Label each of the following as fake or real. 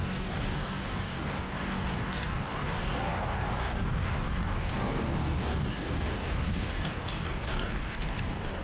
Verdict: fake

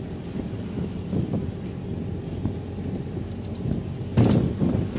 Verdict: real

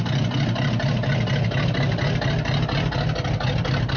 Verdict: real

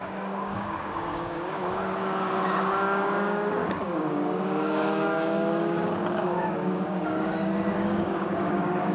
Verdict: fake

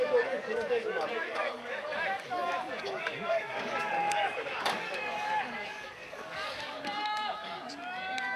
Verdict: fake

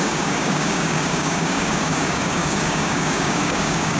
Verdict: fake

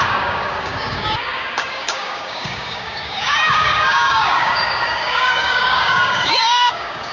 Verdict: fake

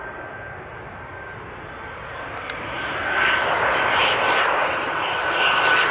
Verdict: real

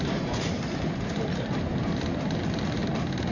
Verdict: real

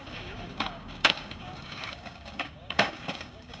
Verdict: fake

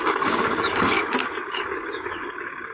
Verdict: fake